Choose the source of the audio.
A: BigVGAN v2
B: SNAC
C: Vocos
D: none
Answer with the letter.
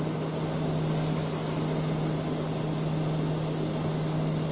D